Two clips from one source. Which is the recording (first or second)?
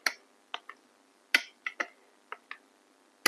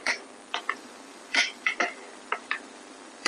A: first